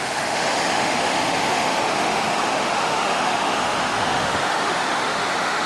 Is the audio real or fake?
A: fake